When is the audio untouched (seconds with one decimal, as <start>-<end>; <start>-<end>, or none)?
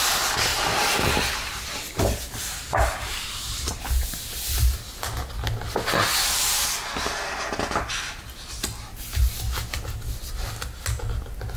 0.0-0.5; 3.8-11.6